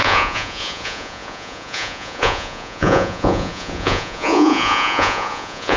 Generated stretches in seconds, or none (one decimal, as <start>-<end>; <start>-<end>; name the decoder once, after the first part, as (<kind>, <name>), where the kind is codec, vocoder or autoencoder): 0.0-5.8 (vocoder, Vocos)